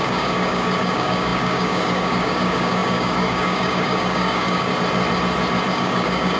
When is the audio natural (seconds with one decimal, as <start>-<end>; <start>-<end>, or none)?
4.7-5.7